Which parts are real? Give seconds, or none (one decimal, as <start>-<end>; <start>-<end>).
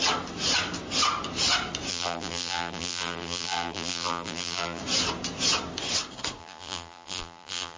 0.0-1.9; 4.8-6.4